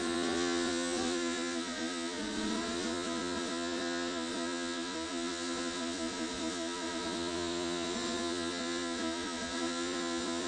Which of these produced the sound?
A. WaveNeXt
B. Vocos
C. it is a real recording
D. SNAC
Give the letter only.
B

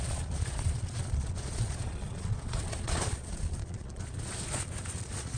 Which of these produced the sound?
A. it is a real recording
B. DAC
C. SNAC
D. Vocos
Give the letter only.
D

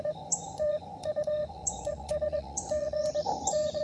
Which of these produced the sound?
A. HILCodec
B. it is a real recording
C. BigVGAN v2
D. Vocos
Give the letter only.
D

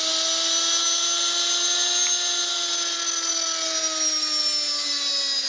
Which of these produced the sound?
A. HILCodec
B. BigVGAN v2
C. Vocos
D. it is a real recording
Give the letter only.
D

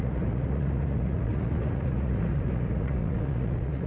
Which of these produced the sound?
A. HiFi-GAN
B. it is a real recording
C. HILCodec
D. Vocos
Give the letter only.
D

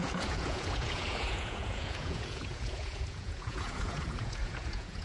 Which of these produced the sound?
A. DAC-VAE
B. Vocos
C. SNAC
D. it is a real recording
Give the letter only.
B